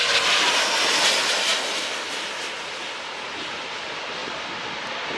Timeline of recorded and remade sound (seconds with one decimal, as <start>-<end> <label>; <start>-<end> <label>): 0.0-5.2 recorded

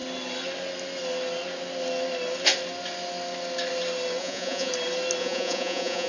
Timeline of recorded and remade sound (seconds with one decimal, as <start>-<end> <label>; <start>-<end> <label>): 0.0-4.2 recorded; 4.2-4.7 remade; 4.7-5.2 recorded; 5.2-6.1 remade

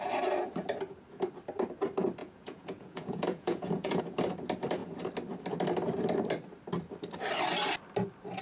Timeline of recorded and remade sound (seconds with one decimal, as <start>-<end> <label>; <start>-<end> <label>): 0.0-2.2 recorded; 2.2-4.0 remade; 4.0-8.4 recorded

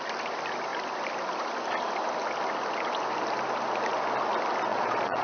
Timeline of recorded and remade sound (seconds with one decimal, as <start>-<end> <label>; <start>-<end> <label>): 0.0-4.7 recorded; 4.7-5.2 remade

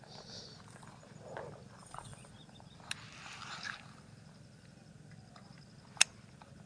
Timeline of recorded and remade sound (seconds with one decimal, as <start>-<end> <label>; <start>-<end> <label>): 0.0-1.8 recorded; 1.8-2.3 remade; 2.3-6.7 recorded